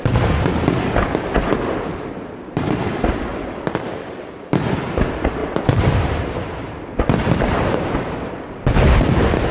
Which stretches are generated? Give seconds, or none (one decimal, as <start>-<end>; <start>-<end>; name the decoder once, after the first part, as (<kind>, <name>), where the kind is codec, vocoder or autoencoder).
0.0-0.5 (vocoder, BigVGAN v2); 1.7-3.3; 4.2-5.4; 6.0-9.5